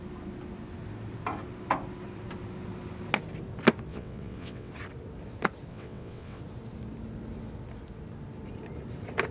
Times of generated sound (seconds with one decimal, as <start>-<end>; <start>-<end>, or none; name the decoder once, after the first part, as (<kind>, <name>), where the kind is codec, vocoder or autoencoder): 3.9-4.7 (vocoder, WaveNeXt); 5.7-6.4